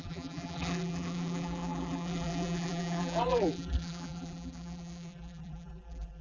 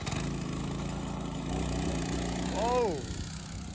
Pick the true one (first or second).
second